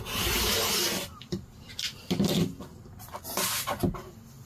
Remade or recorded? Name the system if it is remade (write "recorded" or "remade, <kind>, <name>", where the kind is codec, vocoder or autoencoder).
recorded